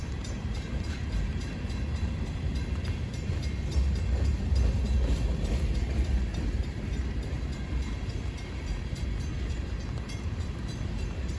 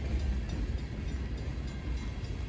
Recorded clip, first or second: second